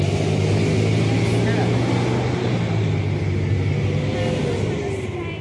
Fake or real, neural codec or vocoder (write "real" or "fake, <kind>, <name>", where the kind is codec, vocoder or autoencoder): real